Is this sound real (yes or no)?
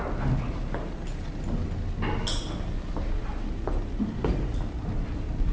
yes